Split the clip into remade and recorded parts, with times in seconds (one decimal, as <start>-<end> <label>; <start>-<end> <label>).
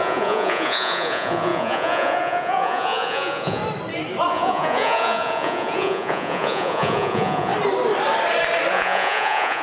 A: 0.0-3.6 remade; 3.6-4.3 recorded; 4.3-7.5 remade; 7.5-8.7 recorded; 8.7-9.6 remade